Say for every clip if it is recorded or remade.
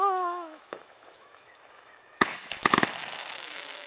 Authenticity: remade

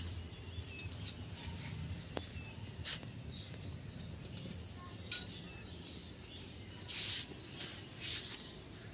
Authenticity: recorded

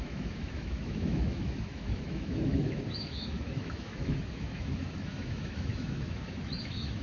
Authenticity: remade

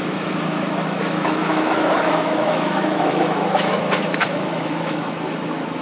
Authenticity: remade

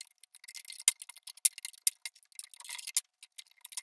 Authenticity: recorded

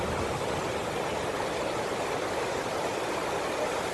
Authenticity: recorded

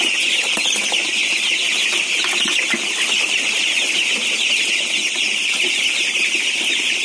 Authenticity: recorded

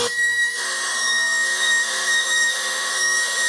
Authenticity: remade